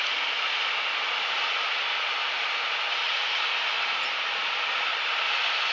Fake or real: real